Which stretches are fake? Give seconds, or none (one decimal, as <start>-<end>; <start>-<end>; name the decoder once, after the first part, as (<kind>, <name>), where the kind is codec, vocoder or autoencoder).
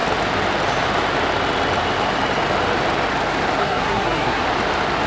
3.6-4.4 (codec, SNAC)